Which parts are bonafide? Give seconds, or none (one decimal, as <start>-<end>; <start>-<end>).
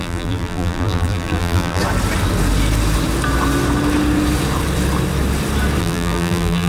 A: 1.8-5.8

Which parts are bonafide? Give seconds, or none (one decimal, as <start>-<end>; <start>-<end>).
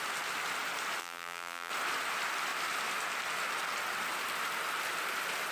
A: 0.0-1.0; 1.7-5.5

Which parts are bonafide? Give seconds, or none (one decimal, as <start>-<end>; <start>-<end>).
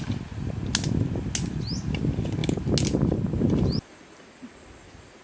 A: 0.0-5.2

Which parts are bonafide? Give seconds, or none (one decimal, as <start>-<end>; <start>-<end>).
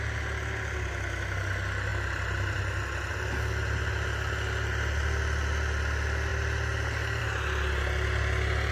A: 0.0-1.9; 3.1-8.7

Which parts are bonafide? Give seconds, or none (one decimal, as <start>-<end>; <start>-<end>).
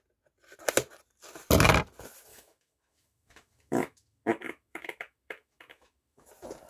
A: 0.0-2.3; 6.3-6.7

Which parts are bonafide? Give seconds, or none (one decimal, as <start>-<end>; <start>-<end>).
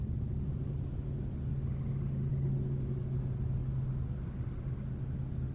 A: 0.0-5.5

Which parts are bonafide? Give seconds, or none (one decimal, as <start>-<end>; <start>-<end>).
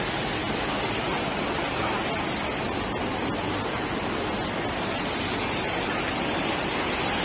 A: 0.0-7.2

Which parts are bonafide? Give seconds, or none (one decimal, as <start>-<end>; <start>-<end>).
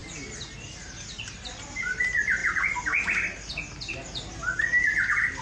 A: 0.0-5.4